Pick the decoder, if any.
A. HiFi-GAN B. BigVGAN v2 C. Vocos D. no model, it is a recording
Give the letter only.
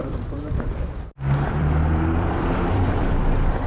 B